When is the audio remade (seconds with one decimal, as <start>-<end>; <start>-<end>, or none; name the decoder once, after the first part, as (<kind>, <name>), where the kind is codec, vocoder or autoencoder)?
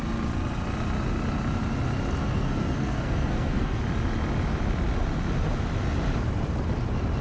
2.2-3.8 (codec, SNAC)